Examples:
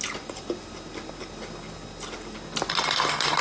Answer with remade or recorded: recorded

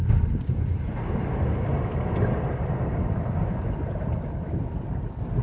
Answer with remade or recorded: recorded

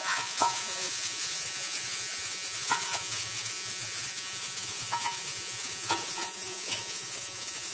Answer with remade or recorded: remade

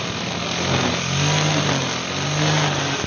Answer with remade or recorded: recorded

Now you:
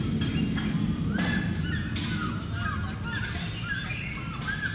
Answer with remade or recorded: recorded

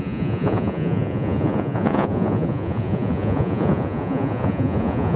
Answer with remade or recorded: remade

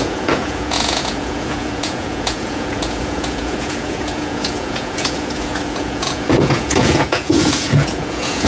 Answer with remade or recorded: remade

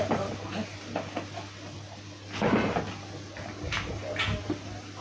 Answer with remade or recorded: recorded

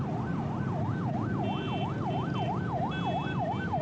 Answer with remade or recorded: recorded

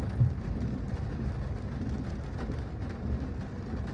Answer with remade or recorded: recorded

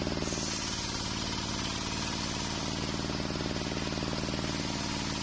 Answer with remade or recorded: recorded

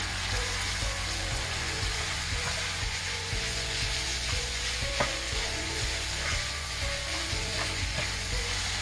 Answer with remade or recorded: remade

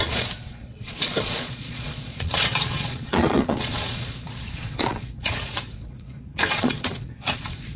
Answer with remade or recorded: remade